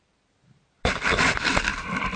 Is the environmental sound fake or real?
fake